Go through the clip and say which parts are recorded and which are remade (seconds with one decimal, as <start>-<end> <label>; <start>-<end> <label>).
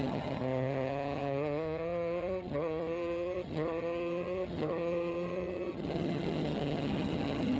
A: 0.0-7.6 remade